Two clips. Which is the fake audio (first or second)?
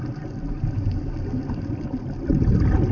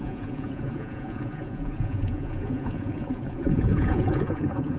second